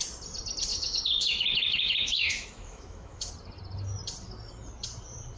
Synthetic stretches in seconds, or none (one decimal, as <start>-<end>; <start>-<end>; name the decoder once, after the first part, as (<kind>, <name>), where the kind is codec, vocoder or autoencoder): 0.7-3.3 (autoencoder, DAC-VAE)